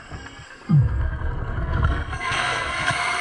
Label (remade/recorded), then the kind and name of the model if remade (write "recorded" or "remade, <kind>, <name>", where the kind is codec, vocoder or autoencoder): remade, codec, SNAC